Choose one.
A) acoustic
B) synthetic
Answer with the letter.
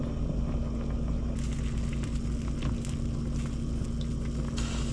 A